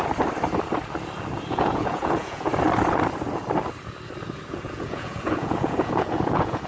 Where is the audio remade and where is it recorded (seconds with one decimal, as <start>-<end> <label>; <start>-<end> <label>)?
0.0-1.5 recorded; 1.5-2.5 remade; 2.5-4.5 recorded; 4.5-6.7 remade